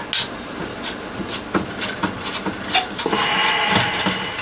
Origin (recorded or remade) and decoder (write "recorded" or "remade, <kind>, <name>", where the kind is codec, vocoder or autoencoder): recorded